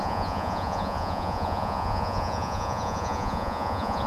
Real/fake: fake